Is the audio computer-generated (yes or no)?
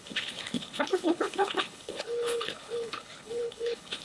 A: yes